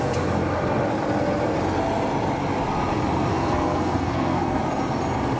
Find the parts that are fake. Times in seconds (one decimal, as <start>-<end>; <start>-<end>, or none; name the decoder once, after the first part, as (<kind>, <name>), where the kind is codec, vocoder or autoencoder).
3.3-4.6 (codec, SNAC)